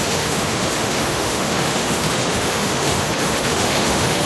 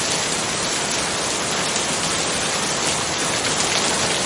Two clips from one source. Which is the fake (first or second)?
first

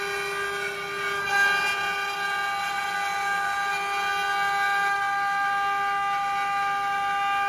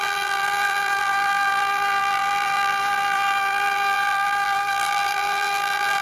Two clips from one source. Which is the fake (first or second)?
second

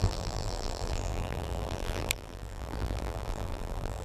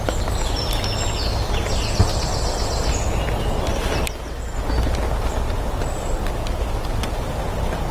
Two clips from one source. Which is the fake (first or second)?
first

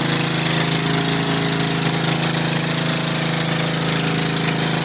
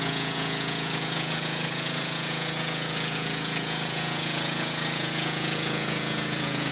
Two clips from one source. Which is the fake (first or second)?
second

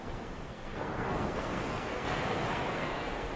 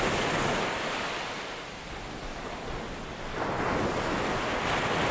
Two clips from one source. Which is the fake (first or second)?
first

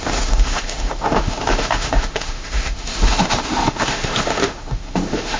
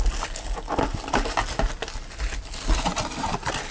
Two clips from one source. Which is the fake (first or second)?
first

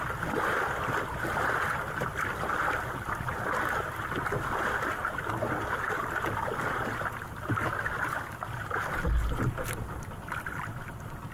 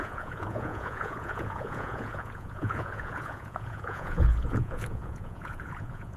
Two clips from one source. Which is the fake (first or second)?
second